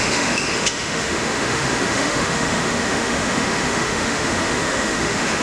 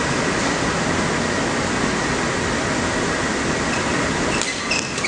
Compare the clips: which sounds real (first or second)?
second